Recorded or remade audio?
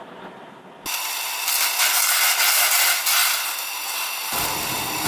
recorded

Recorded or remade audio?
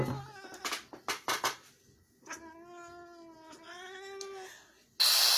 recorded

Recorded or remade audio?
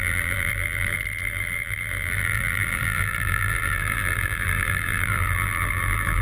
remade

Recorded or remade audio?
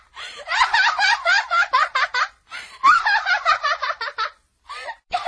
remade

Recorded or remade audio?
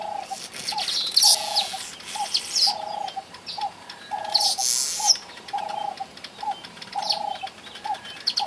recorded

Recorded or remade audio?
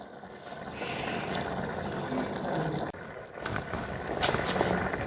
recorded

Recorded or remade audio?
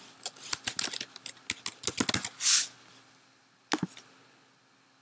recorded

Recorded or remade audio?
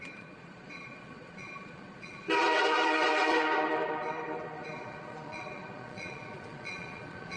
remade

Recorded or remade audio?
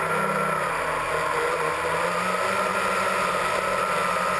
recorded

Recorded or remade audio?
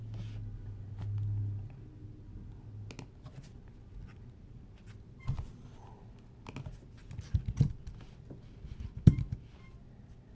recorded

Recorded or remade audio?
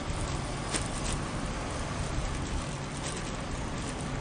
recorded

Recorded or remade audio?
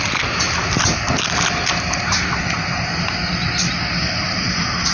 recorded